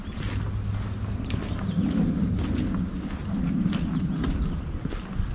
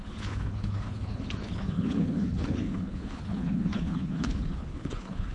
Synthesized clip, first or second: second